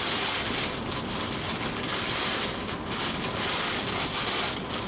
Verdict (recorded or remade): recorded